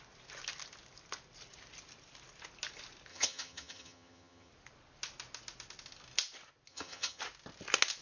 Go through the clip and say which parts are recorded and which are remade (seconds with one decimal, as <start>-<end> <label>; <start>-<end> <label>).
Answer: 0.0-3.1 recorded; 3.1-4.5 remade; 4.5-6.7 recorded; 6.7-7.2 remade; 7.2-8.0 recorded